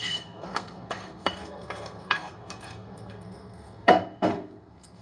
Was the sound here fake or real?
fake